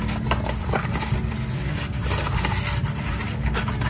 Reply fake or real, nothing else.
fake